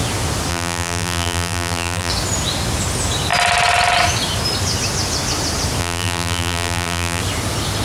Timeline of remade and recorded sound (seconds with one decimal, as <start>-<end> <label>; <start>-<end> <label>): 0.0-0.5 recorded; 0.5-2.1 remade; 2.1-5.8 recorded; 5.8-7.2 remade; 7.2-7.8 recorded